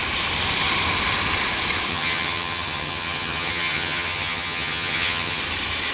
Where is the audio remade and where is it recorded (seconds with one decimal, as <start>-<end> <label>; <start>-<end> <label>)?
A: 0.0-1.9 recorded; 1.9-5.4 remade; 5.4-5.9 recorded